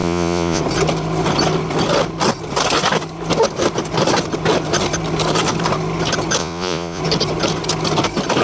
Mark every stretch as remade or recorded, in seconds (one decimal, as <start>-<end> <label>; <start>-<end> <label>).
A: 0.0-0.6 remade; 0.6-6.4 recorded; 6.4-7.0 remade; 7.0-8.4 recorded